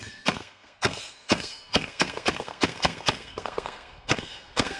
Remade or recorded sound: remade